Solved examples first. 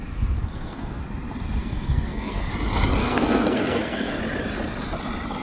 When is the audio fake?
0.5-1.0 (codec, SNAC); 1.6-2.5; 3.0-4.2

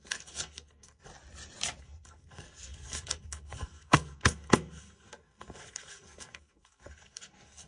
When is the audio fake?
0.0-1.1 (codec, SNAC); 1.8-7.7

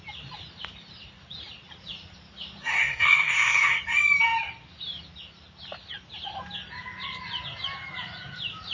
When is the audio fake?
2.6-3.8 (codec, SNAC)

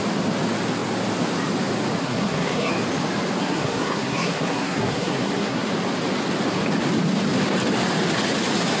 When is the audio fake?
2.0-2.7 (codec, SNAC); 3.4-5.7

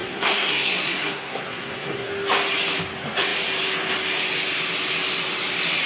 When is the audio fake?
0.0-2.1 (codec, SNAC)

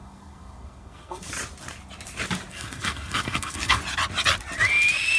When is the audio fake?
0.0-1.3 (codec, SNAC); 2.5-3.8